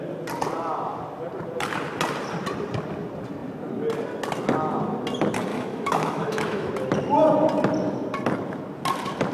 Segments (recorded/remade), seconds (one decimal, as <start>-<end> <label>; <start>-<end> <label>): 0.0-5.5 recorded; 5.5-6.7 remade; 6.7-9.3 recorded